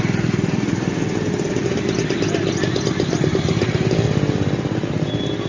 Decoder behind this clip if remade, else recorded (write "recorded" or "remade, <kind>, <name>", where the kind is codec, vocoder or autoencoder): recorded